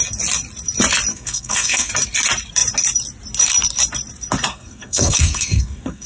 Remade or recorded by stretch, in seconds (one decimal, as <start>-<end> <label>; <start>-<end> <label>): 0.0-1.1 recorded; 1.1-1.9 remade; 1.9-4.5 recorded; 4.5-6.1 remade